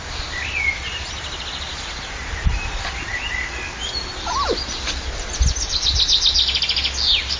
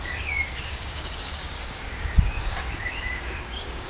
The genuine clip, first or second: first